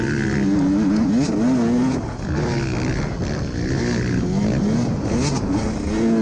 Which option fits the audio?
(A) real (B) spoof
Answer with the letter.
A